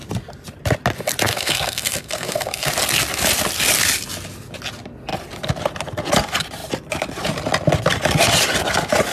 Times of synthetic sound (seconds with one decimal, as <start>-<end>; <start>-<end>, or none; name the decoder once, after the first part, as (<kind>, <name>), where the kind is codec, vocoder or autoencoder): 1.3-2.7 (codec, SNAC)